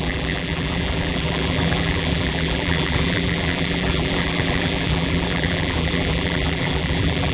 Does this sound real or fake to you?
fake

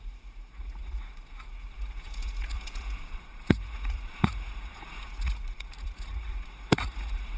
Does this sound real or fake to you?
fake